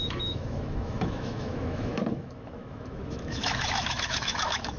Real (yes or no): no